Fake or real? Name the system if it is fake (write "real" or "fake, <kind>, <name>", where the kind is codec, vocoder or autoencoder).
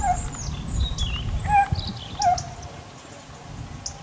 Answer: real